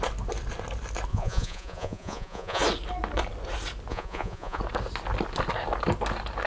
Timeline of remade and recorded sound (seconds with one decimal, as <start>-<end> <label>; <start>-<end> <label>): 0.0-1.1 recorded; 1.1-2.6 remade; 2.6-3.9 recorded; 3.9-4.6 remade; 4.6-6.5 recorded